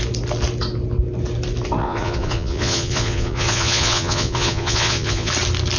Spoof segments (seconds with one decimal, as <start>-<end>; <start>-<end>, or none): 1.8-5.3